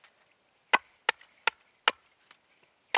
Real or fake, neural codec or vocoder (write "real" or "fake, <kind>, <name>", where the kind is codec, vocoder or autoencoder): real